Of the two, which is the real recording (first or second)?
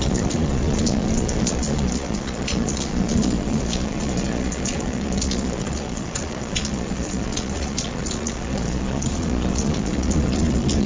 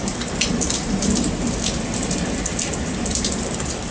second